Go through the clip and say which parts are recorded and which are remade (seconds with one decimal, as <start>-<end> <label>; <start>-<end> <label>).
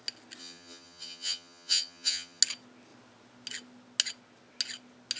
0.0-0.4 recorded; 0.4-2.4 remade; 2.4-5.2 recorded